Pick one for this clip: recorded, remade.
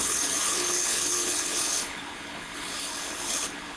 remade